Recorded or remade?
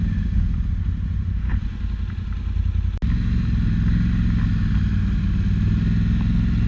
recorded